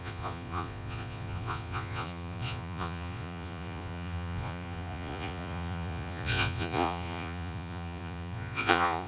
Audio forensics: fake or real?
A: fake